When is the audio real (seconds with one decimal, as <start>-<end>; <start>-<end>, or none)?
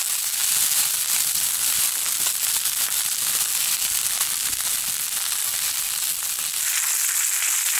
0.0-0.4; 4.5-7.8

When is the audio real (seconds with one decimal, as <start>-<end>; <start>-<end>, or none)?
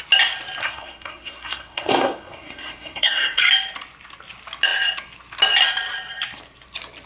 0.0-0.6; 3.4-7.1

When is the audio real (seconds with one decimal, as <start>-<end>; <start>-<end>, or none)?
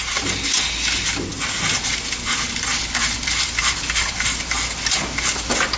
0.0-5.8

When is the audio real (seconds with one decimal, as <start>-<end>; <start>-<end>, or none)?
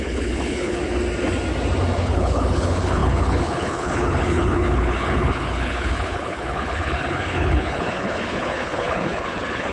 0.8-2.0